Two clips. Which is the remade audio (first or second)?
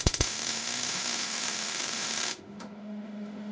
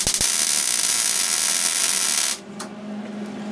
first